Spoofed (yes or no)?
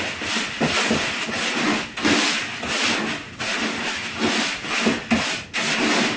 no